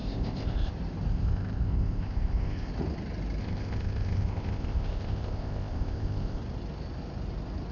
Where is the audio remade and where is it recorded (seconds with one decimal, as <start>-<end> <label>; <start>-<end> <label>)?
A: 0.0-0.7 remade; 0.7-1.1 recorded; 1.1-2.7 remade; 2.7-3.4 recorded; 3.4-6.4 remade; 6.4-7.7 recorded